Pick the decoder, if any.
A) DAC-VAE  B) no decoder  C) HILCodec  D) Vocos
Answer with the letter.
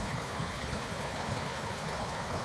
C